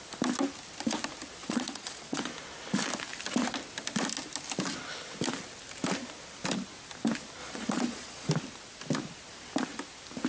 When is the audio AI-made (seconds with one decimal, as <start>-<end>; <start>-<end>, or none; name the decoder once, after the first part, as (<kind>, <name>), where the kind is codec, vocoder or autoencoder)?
1.4-2.3 (vocoder, Vocos); 7.4-8.3